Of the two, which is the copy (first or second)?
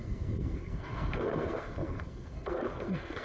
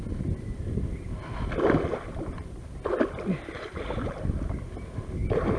first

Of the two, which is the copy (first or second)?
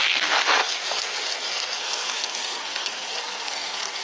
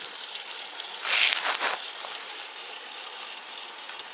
first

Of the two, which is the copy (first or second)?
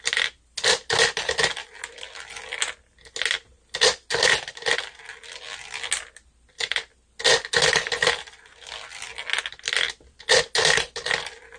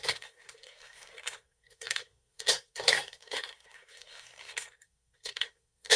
second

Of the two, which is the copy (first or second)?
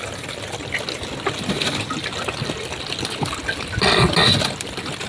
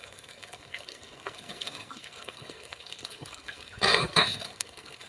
second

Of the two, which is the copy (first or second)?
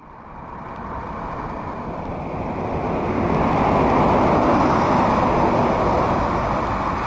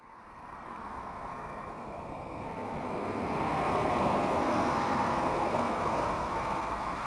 second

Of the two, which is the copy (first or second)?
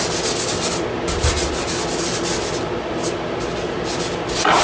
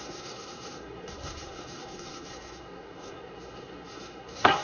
second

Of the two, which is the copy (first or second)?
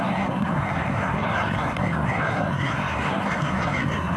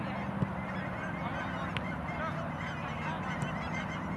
first